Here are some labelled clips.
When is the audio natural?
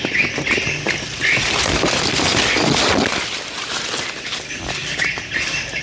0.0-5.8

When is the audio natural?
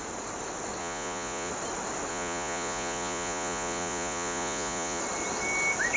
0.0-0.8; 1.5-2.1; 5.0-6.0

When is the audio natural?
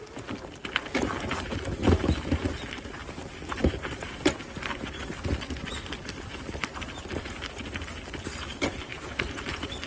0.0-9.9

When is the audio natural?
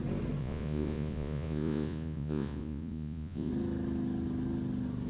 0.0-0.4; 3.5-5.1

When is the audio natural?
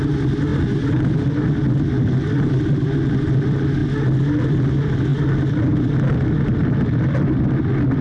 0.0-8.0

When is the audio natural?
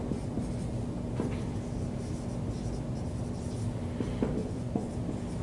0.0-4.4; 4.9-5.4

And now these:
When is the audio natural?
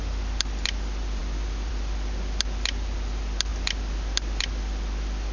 0.0-5.3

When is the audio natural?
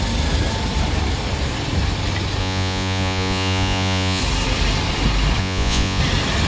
0.0-2.4; 4.2-5.4; 6.0-6.5